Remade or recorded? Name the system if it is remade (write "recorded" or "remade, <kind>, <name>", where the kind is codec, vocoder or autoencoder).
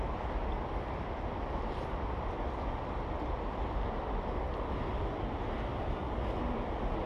remade, vocoder, BigVGAN v2